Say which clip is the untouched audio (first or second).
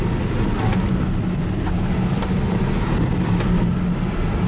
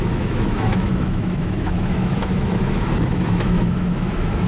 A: first